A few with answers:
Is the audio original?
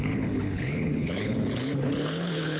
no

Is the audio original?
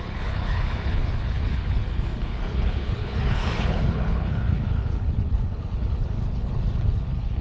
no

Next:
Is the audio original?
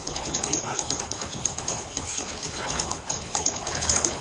no